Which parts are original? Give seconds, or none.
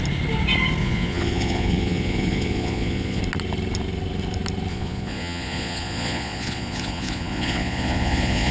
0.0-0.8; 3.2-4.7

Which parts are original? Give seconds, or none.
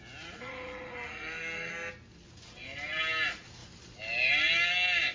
0.0-1.1; 1.7-5.1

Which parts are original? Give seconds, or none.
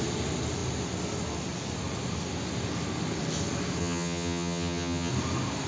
0.0-3.8; 5.1-5.7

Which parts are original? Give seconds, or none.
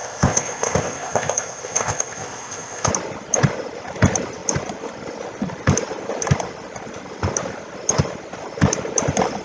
2.9-9.4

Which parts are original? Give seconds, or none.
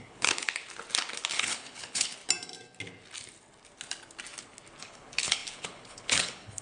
0.6-1.4; 2.2-4.8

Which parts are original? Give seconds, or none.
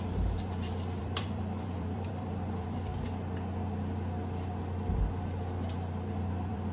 2.9-6.1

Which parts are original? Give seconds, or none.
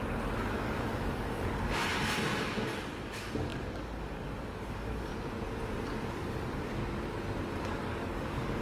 1.9-2.7; 5.1-6.1; 6.8-7.5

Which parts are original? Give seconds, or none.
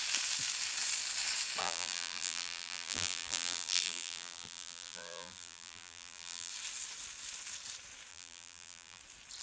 0.0-1.6; 6.5-8.1; 9.0-9.4